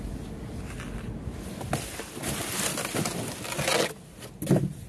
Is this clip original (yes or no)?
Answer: yes